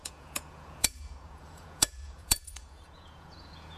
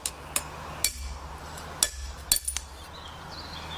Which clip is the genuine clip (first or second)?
second